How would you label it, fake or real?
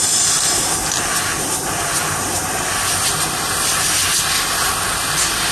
real